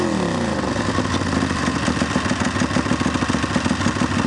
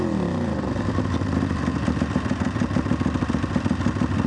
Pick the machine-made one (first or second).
second